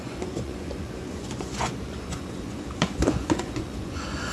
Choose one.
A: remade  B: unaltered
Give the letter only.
A